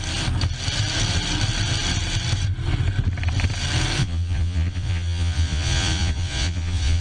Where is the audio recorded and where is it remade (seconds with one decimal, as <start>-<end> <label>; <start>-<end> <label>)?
0.0-4.0 recorded; 4.0-7.0 remade